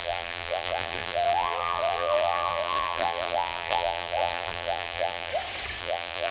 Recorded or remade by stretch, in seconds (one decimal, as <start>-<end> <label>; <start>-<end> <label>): 0.0-5.3 remade; 5.3-5.8 recorded; 5.8-6.3 remade